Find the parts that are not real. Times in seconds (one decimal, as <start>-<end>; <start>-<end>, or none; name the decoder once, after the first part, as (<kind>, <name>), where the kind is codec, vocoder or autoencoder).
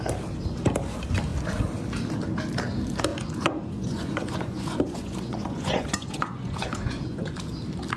3.1-7.4 (vocoder, Vocos)